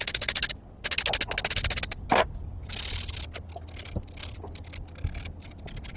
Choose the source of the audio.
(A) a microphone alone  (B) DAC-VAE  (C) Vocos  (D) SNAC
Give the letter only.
A